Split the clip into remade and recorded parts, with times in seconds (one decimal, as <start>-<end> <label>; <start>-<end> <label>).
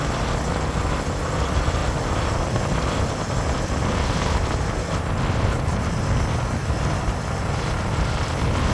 0.0-8.7 recorded